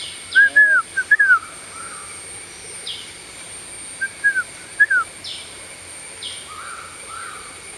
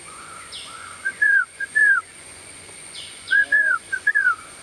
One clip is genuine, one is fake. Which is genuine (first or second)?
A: first